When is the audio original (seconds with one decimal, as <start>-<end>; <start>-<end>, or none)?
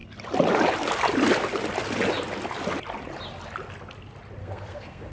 0.0-4.4